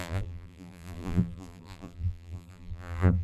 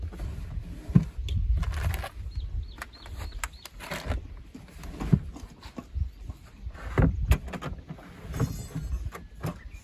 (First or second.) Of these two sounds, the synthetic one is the first